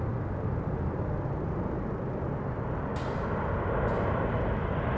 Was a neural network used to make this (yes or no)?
no